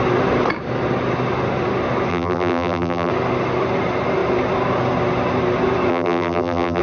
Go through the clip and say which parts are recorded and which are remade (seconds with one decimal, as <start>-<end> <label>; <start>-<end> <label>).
0.0-2.1 recorded; 2.1-3.1 remade; 3.1-5.9 recorded; 5.9-6.8 remade